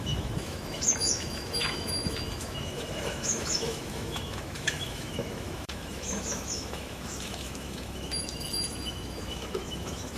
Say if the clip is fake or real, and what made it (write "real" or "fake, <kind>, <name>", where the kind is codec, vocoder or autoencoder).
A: fake, autoencoder, DAC-VAE